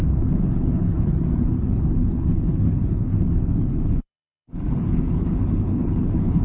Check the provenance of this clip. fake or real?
fake